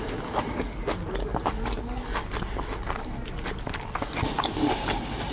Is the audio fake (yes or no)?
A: no